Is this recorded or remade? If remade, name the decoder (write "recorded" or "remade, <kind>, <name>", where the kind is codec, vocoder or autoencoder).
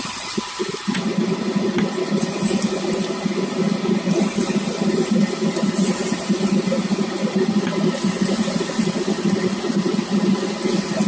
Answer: recorded